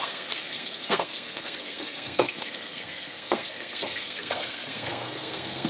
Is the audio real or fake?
fake